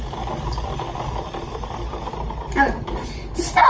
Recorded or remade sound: recorded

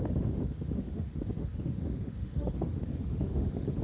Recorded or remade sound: remade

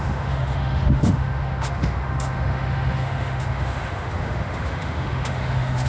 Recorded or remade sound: remade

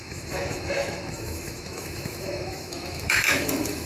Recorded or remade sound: remade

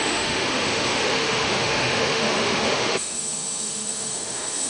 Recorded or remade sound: remade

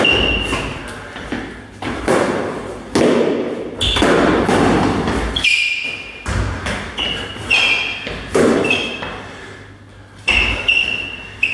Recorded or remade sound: recorded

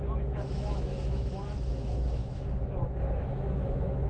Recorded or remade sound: remade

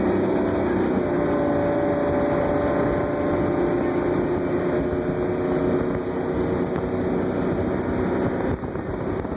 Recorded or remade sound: recorded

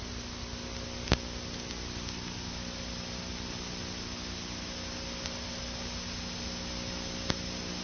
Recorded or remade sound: recorded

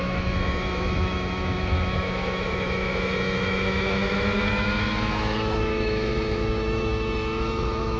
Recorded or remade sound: remade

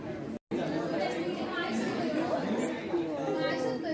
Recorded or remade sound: recorded